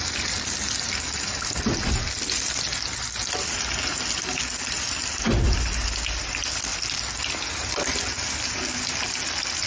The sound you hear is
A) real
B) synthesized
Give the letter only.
A